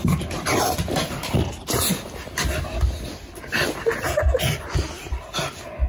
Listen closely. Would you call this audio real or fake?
real